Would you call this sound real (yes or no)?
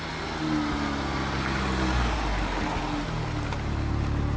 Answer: yes